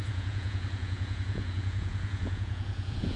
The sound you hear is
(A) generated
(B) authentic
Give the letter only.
A